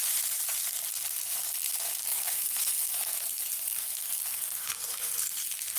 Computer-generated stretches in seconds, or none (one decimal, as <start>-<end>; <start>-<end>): 2.0-5.8

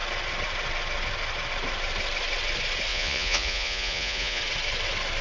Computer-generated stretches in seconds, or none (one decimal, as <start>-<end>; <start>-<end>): 2.9-4.4